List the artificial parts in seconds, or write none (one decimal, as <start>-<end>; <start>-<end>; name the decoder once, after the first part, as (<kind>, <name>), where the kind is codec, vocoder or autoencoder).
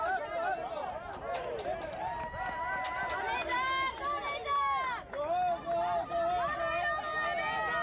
none